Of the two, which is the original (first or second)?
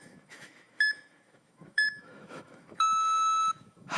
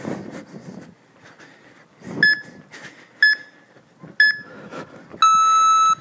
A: second